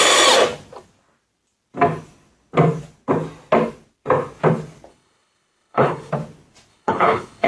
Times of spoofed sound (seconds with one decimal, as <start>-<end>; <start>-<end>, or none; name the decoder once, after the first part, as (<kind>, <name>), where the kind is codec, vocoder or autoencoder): 4.9-6.1 (codec, HILCodec); 6.7-7.5